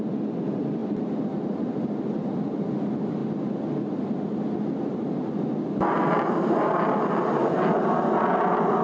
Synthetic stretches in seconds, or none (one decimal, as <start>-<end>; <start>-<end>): none

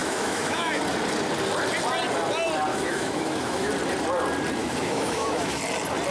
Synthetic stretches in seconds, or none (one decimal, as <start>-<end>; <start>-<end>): 0.0-0.8; 2.7-3.7; 4.6-5.6

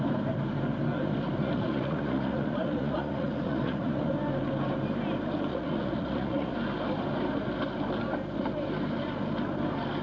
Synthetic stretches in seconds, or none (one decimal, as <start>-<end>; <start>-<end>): 1.4-4.1; 5.5-6.5

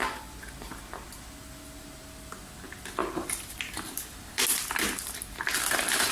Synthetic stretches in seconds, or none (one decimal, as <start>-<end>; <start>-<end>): 3.0-4.4